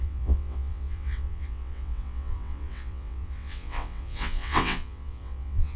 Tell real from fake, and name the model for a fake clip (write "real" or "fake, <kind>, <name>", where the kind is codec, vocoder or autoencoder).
fake, vocoder, WaveNeXt